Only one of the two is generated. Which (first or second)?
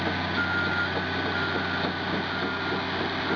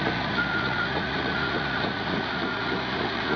second